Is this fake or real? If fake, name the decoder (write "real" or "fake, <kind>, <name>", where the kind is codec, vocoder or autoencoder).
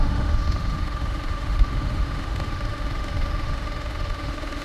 fake, autoencoder, DAC-VAE